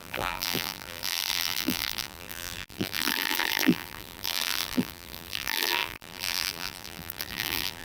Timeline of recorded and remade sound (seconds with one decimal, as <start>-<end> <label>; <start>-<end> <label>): 0.0-7.8 remade